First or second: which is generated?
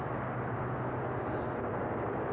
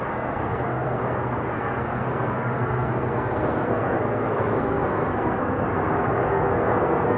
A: second